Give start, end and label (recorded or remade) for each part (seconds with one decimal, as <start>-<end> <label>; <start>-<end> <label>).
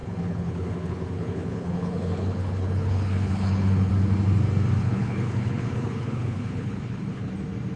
0.0-3.9 remade; 3.9-4.8 recorded; 4.8-7.3 remade; 7.3-7.8 recorded